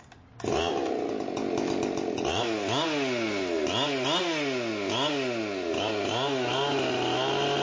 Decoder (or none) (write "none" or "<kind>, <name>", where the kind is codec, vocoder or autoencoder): none